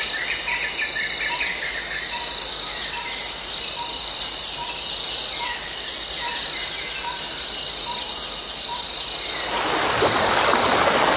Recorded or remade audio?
recorded